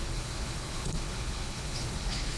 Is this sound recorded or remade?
remade